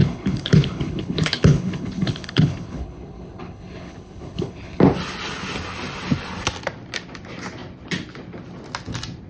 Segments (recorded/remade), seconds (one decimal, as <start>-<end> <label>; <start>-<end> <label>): 0.0-4.8 remade; 4.8-9.3 recorded